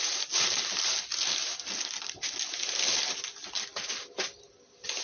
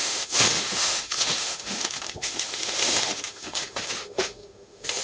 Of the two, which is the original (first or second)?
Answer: first